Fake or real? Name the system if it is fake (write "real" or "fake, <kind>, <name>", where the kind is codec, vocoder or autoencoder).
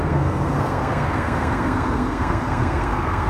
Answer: fake, codec, SNAC